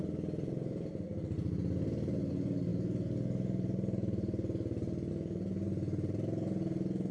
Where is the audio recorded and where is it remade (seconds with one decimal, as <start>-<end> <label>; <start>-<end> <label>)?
0.0-7.1 recorded